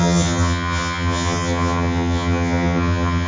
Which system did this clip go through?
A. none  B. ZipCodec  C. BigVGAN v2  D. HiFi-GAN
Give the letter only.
D